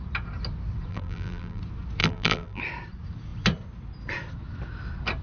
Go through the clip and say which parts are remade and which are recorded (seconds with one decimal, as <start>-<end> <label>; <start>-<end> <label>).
0.0-0.9 recorded; 0.9-1.6 remade; 1.6-2.0 recorded; 2.0-2.6 remade; 2.6-5.2 recorded